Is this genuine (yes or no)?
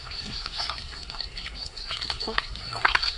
no